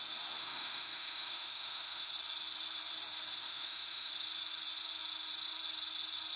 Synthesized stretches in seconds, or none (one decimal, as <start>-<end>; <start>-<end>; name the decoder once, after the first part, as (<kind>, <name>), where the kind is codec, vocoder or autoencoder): 0.4-2.1 (autoencoder, DAC-VAE); 3.4-4.1